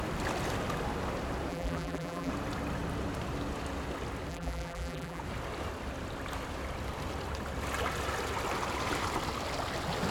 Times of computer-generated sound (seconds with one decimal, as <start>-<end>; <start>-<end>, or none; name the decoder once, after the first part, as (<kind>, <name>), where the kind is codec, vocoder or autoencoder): 1.5-2.3 (vocoder, BigVGAN v2); 4.3-5.2